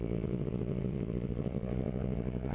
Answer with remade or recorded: remade